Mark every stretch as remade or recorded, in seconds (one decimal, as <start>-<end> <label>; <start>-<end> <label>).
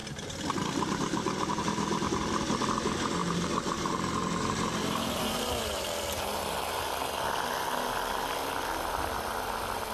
0.0-2.3 remade; 2.3-3.2 recorded; 3.2-6.6 remade; 6.6-9.9 recorded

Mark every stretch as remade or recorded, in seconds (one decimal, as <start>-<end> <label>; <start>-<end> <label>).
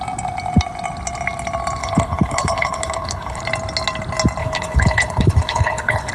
0.0-1.8 recorded; 1.8-3.4 remade; 3.4-4.4 recorded; 4.4-6.1 remade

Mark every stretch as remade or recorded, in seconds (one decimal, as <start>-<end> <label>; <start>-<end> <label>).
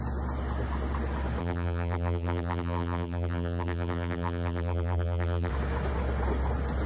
0.0-1.4 recorded; 1.4-5.5 remade; 5.5-6.9 recorded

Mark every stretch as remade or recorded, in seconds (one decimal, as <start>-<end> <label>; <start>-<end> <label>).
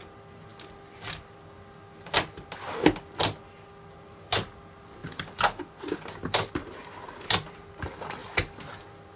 0.0-6.6 recorded; 6.6-7.2 remade; 7.2-9.2 recorded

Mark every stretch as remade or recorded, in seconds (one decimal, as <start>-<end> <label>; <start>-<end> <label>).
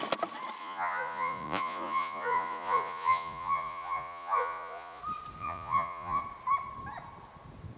0.0-0.6 recorded; 0.6-5.0 remade; 5.0-5.4 recorded; 5.4-6.2 remade; 6.2-7.8 recorded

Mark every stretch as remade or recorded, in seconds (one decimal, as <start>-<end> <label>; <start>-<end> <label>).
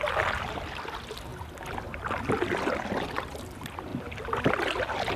0.0-5.2 recorded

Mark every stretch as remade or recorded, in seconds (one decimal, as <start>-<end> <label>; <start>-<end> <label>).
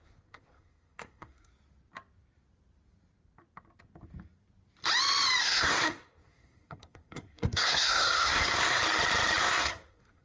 0.0-1.5 remade; 1.5-5.4 recorded; 5.4-8.8 remade; 8.8-9.4 recorded; 9.4-10.2 remade